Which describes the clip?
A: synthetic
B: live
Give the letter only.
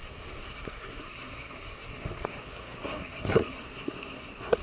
A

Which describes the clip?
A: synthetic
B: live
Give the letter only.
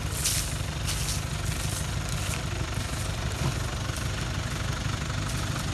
B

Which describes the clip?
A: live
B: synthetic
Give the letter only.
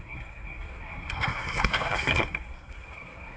B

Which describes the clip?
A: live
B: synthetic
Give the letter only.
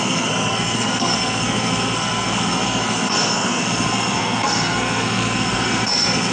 B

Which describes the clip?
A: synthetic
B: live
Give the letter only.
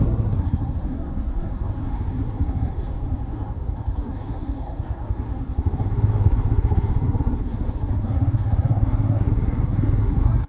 A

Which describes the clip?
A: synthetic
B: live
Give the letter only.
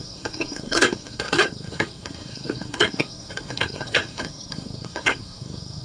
A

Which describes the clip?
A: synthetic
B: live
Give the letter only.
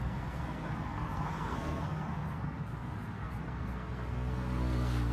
A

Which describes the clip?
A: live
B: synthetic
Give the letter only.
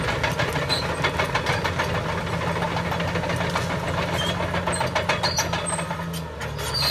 A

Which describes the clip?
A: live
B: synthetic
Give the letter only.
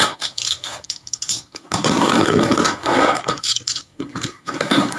B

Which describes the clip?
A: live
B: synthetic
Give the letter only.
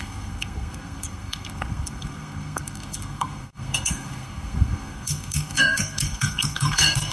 B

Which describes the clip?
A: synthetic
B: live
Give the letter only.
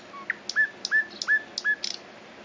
B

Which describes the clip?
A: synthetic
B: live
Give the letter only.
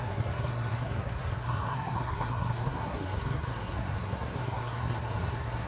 A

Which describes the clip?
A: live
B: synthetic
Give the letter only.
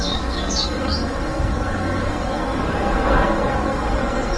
B